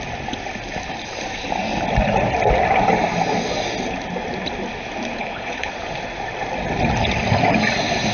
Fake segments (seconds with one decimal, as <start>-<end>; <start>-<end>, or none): 5.2-5.7